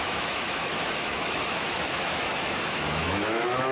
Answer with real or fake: fake